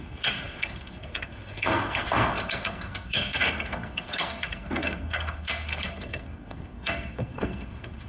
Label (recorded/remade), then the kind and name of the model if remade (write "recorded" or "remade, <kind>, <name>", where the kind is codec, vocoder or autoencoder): remade, codec, SNAC